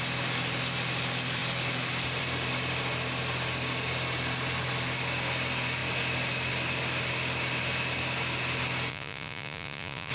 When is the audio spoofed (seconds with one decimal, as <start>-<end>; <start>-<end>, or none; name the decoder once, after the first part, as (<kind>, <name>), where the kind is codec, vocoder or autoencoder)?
8.9-10.1 (vocoder, Vocos)